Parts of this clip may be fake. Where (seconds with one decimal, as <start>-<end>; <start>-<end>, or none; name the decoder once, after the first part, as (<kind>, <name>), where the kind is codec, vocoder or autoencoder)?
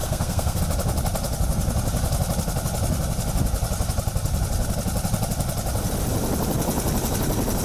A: 0.0-0.6 (codec, SNAC)